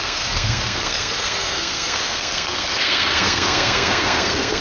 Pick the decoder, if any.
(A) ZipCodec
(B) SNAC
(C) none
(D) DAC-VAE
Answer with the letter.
B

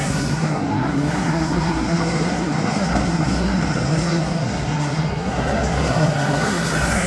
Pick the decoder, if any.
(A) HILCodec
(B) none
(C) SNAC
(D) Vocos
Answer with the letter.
C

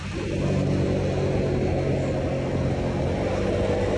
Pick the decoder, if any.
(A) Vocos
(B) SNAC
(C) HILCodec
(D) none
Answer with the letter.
D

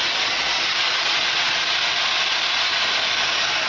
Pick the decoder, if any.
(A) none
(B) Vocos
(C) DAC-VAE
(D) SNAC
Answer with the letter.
A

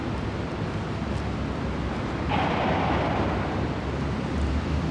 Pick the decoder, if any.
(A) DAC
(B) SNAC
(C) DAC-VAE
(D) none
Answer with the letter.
D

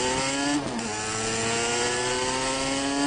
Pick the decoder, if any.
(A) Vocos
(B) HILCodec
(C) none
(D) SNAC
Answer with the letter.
C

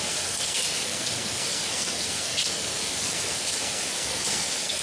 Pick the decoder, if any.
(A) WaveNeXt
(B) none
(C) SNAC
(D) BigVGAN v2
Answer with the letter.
C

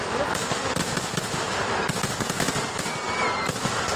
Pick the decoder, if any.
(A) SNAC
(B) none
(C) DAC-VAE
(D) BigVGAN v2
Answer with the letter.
B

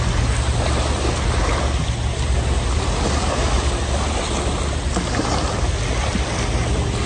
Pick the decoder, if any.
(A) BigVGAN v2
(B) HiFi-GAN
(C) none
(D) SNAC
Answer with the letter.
C